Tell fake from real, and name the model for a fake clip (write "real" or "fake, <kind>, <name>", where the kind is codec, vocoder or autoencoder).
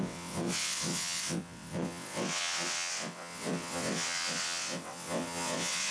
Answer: fake, vocoder, WaveNeXt